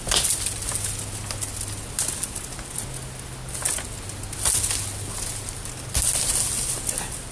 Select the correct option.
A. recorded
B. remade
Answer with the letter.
A